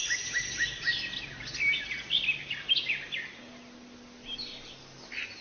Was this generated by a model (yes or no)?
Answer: no